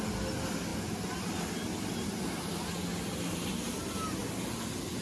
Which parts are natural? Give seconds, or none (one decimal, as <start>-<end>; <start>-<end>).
0.0-5.0